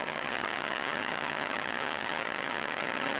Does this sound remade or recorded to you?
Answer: remade